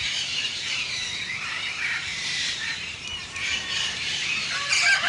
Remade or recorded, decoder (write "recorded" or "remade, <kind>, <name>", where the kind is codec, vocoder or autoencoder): remade, vocoder, BigVGAN v2